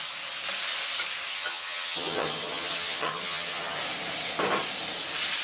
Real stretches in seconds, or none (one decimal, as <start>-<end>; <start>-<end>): 0.0-1.3; 3.8-5.4